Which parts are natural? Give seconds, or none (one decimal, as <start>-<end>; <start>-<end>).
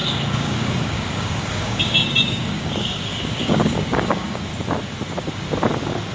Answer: 4.5-6.1